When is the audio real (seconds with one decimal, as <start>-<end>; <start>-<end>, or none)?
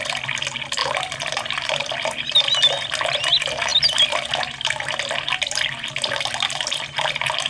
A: 0.0-0.8; 1.9-7.5